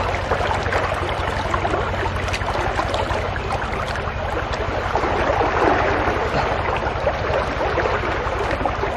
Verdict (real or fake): real